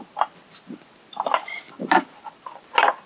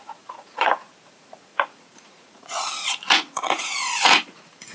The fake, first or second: second